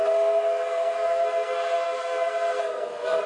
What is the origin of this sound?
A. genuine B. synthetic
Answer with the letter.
B